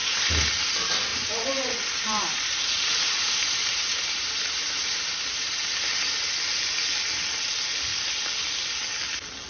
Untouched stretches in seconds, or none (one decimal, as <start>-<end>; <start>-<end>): 0.5-1.1; 5.7-9.5